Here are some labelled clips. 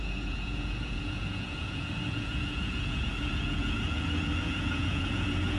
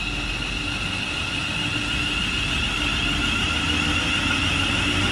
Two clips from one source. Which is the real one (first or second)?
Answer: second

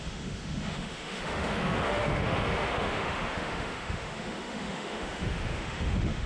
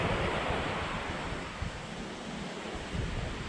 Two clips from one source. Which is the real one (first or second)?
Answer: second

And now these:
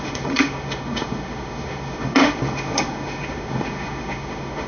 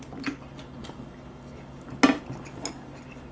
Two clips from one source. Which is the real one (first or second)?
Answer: second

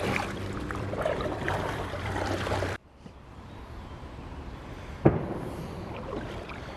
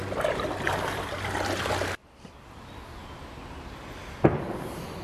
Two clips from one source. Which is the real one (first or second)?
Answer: second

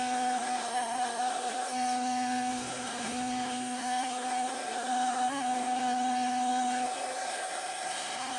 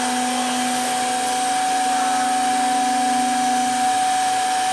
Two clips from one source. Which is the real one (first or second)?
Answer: second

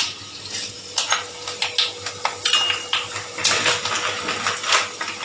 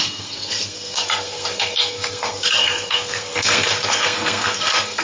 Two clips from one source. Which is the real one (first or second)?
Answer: first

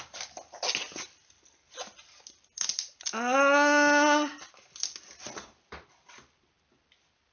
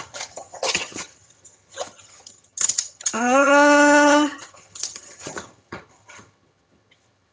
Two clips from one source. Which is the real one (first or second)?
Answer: first